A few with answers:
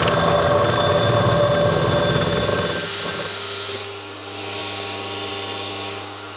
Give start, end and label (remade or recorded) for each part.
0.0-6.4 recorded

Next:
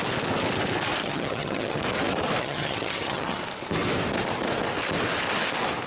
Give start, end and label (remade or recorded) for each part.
0.0-1.0 recorded; 1.0-1.8 remade; 1.8-2.4 recorded; 2.4-3.4 remade; 3.4-5.9 recorded

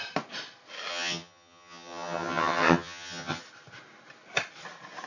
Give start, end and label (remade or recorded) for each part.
0.0-0.9 recorded; 0.9-3.4 remade; 3.4-5.1 recorded

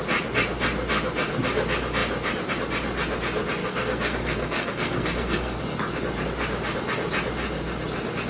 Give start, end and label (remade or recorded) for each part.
0.0-3.6 recorded; 3.6-5.6 remade; 5.6-8.3 recorded

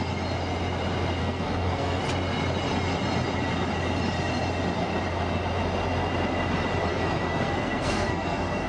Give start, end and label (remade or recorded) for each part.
0.0-1.2 recorded; 1.2-2.0 remade; 2.0-6.9 recorded; 6.9-8.7 remade